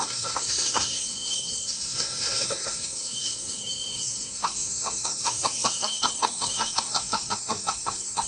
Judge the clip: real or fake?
fake